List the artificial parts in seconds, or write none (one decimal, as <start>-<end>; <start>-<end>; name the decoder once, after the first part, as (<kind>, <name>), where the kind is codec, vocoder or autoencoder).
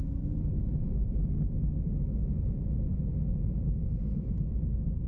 3.8-4.5 (codec, SNAC)